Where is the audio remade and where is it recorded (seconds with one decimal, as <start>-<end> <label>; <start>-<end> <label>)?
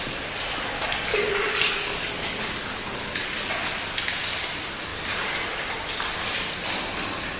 0.0-1.1 recorded; 1.1-3.5 remade; 3.5-7.4 recorded